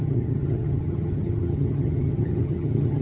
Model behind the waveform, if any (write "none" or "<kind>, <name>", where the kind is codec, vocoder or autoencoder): vocoder, HiFi-GAN